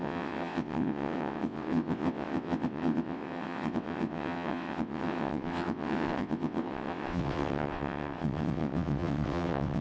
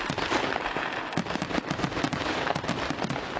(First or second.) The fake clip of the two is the first